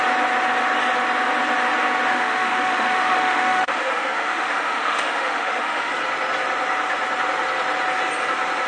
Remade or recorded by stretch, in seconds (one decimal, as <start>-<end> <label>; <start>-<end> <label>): 0.0-2.1 recorded; 2.1-5.9 remade; 5.9-8.7 recorded